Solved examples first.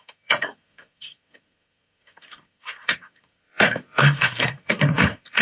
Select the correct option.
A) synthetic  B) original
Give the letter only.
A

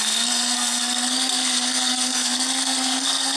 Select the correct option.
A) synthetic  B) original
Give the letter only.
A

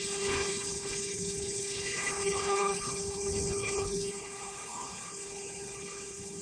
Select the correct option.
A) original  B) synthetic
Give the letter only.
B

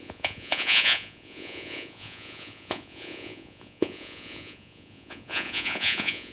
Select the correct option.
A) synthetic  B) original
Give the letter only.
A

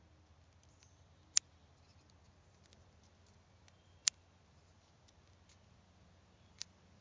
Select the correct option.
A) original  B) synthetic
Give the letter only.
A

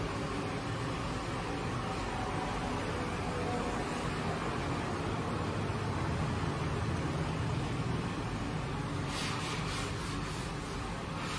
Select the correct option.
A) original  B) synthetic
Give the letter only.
A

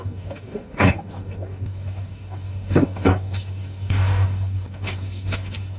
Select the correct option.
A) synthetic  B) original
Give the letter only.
A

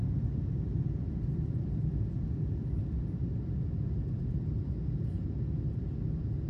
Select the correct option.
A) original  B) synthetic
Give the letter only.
A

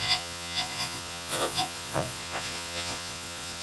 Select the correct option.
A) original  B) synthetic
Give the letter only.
B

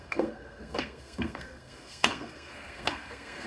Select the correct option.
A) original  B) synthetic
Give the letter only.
B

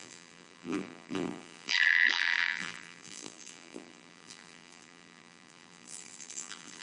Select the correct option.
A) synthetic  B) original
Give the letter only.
A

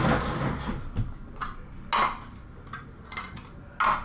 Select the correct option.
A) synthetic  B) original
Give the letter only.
B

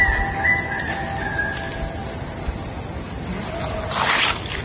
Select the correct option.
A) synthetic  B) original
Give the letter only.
B